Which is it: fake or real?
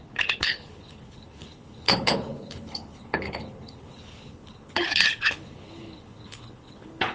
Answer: fake